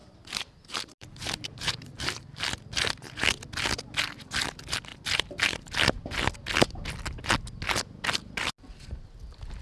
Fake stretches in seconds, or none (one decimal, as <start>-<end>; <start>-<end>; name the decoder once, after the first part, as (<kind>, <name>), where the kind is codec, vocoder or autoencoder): 0.0-2.2 (vocoder, BigVGAN v2)